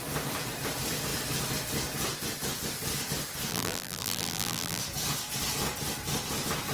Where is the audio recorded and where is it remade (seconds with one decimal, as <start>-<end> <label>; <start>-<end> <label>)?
0.0-3.5 recorded; 3.5-4.8 remade; 4.8-6.7 recorded